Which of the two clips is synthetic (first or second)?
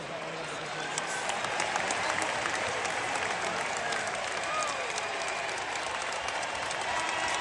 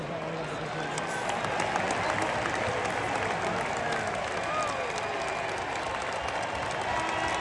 first